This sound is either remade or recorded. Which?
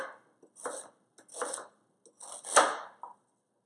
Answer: recorded